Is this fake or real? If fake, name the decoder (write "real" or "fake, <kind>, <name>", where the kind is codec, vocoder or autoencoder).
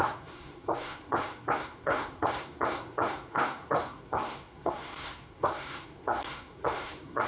fake, codec, SNAC